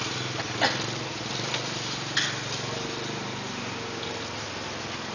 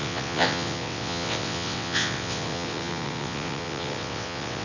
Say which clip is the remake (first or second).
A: second